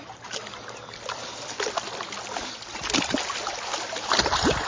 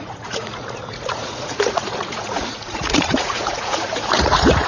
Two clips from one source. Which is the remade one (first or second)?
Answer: second